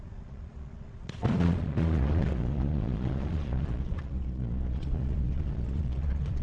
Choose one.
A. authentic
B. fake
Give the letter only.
B